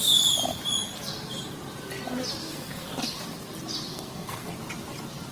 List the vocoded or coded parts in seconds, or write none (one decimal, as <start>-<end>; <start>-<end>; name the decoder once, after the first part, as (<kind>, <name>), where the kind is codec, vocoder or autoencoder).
2.4-3.2 (codec, SNAC); 3.9-4.5

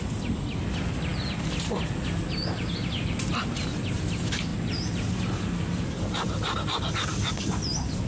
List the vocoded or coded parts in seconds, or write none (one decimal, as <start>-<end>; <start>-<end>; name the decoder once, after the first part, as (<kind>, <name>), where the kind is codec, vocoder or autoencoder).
none

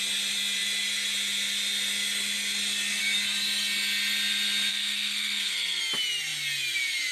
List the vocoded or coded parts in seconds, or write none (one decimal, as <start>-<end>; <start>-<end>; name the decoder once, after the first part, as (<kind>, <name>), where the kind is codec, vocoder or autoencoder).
4.7-5.8 (codec, SNAC)

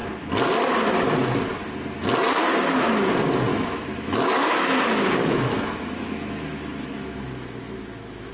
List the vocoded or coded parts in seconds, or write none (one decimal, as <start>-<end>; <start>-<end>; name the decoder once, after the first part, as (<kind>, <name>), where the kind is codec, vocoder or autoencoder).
3.5-8.3 (autoencoder, DAC-VAE)